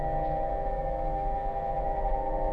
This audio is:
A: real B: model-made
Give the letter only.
B